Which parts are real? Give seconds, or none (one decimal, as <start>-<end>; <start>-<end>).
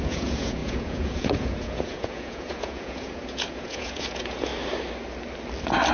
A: 4.5-5.9